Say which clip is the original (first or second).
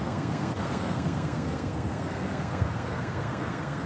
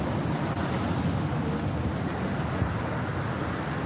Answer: second